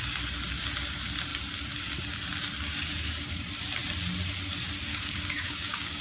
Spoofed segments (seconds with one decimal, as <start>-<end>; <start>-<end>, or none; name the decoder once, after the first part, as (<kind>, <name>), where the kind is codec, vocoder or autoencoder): 4.9-6.0 (codec, DAC)